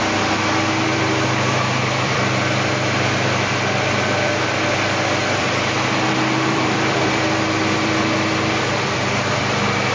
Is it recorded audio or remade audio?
remade